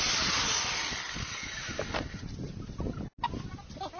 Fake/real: real